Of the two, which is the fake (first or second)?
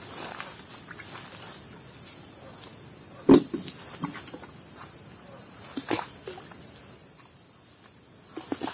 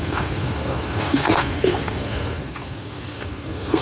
second